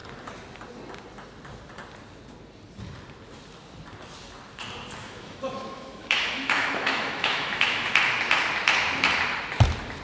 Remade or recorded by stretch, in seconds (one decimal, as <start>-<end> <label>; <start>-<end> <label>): 0.0-5.0 recorded; 5.0-7.9 remade; 7.9-10.0 recorded